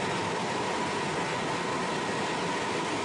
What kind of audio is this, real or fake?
real